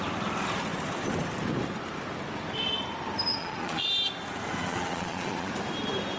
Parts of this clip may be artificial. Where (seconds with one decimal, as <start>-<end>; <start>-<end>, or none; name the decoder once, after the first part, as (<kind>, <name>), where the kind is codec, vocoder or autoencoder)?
3.4-3.9 (vocoder, Vocos); 4.6-5.5